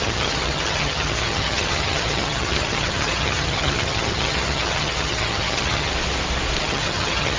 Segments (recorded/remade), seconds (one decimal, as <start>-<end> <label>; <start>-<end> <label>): 0.0-5.9 remade; 5.9-6.6 recorded; 6.6-7.4 remade